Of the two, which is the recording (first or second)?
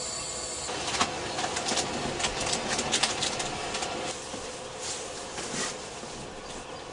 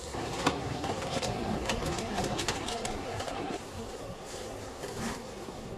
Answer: first